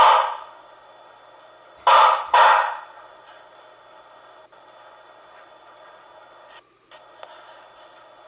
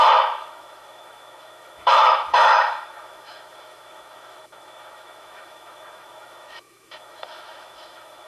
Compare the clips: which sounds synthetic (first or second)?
second